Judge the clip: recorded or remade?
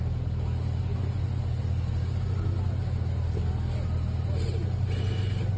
recorded